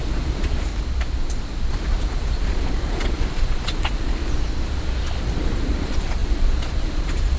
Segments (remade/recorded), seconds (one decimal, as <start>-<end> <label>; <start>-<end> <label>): 0.0-0.7 remade; 0.7-1.7 recorded; 1.7-4.2 remade; 4.2-5.2 recorded; 5.2-7.4 remade